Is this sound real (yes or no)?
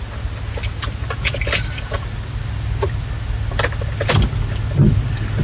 yes